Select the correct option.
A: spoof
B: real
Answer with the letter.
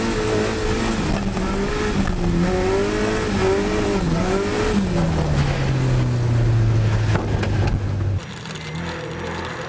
B